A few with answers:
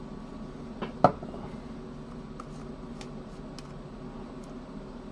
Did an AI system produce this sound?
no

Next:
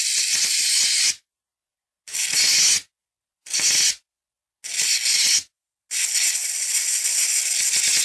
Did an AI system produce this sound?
no